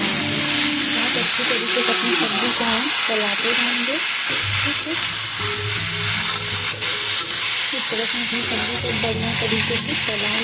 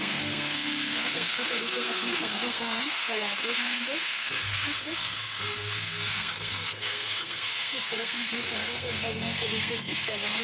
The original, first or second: first